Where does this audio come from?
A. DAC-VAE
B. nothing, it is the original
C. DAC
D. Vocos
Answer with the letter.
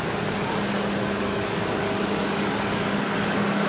C